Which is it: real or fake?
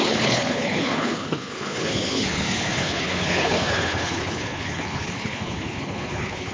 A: fake